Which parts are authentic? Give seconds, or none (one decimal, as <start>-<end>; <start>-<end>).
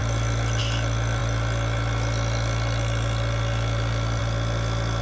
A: 0.0-5.0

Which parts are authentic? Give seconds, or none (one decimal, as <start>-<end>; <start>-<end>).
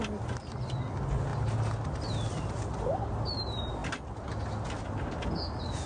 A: 0.0-5.9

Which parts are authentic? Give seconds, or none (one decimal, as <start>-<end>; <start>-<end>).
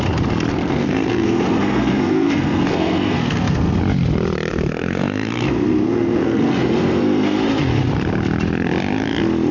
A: 0.0-0.5; 3.8-4.5; 7.6-9.5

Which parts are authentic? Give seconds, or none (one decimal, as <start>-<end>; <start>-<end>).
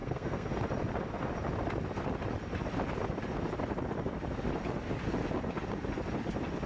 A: 0.5-6.7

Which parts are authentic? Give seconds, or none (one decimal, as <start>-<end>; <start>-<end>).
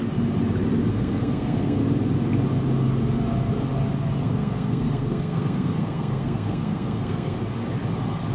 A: 0.0-0.9; 1.8-4.2; 7.4-8.3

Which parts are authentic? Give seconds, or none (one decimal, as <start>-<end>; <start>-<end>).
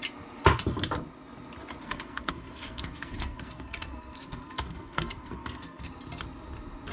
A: 0.0-1.8; 5.9-6.9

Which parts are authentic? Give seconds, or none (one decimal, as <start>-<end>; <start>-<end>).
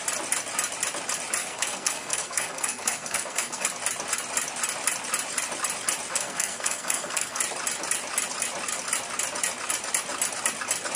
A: 0.0-1.4; 3.7-6.1; 7.4-11.0